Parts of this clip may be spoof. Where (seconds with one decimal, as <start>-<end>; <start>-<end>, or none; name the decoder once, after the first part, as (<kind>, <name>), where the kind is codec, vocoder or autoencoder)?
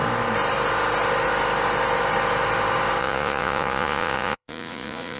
3.0-5.2 (vocoder, Vocos)